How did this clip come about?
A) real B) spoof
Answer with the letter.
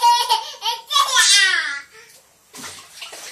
A